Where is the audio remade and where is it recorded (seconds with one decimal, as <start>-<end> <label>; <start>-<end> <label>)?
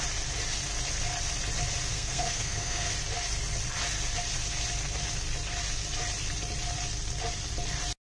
0.0-1.9 recorded; 1.9-2.9 remade; 2.9-8.1 recorded